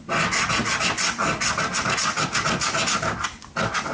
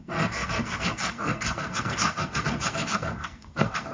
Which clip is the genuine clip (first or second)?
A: first